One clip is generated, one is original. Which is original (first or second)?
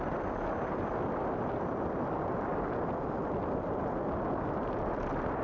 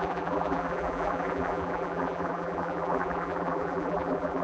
first